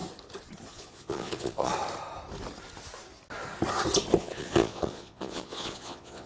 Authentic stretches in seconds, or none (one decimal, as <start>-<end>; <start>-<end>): 0.0-0.7; 1.7-4.2